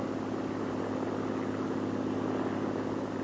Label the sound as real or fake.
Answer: real